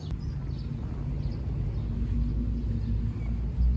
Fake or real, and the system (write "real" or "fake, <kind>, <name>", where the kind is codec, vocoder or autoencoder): real